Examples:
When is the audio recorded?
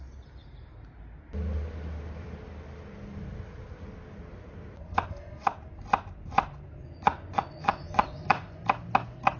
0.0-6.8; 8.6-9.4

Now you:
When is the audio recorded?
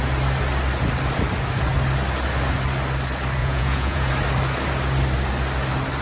0.0-3.4; 4.1-6.0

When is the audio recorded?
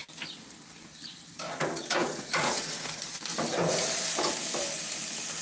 0.0-2.0; 3.2-5.4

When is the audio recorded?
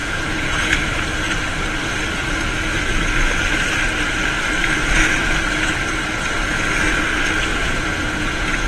1.3-7.5